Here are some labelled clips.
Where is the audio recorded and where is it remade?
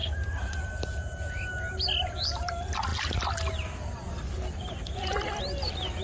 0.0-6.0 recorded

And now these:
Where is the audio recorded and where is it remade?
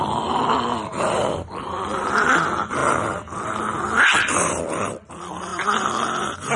0.0-5.5 recorded; 5.5-6.6 remade